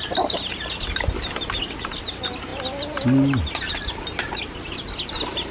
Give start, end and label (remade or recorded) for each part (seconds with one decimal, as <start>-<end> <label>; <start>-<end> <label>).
0.0-5.5 recorded